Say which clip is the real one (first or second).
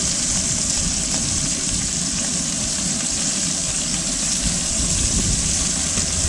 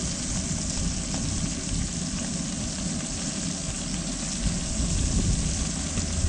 second